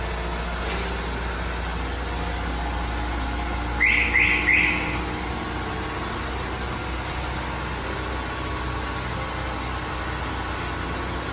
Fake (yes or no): no